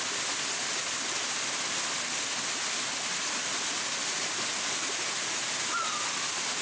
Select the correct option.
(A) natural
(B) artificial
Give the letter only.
A